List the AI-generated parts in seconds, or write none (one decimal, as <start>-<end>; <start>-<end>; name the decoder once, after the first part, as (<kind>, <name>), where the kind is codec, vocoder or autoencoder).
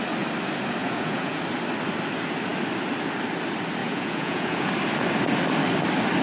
0.8-1.4 (vocoder, Vocos); 3.8-4.7